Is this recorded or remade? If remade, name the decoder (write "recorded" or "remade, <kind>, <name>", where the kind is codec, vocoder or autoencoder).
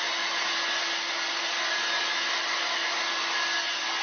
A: recorded